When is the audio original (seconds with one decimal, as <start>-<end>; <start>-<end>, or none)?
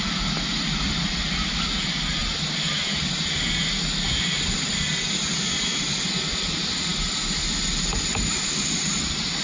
0.0-9.4